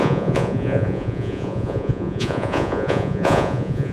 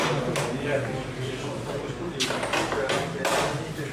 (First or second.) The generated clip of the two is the first